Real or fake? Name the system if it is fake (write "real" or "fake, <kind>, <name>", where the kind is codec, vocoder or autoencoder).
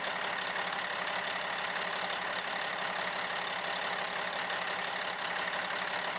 real